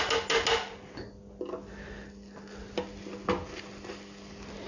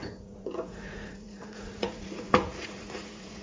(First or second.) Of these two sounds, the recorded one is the first